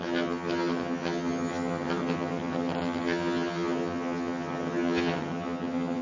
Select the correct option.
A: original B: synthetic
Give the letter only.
B